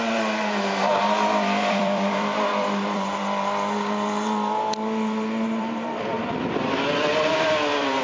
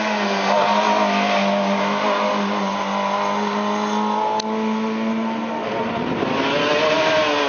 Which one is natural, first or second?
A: second